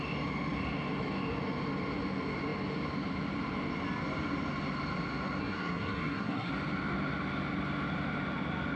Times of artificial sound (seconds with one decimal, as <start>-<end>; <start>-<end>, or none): 5.4-6.5